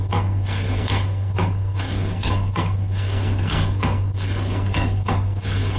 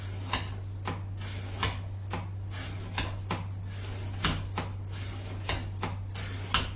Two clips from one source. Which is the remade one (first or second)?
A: first